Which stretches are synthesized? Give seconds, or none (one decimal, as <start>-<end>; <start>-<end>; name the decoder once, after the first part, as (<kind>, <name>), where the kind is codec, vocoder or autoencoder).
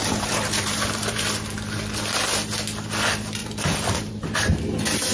0.0-1.2 (vocoder, BigVGAN v2); 3.4-4.1